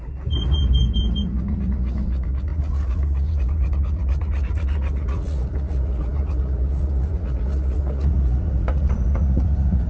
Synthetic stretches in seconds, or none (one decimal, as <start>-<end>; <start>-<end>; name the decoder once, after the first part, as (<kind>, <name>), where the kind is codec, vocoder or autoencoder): 0.0-9.9 (vocoder, Vocos)